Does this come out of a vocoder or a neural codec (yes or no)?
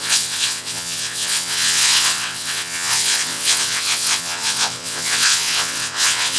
yes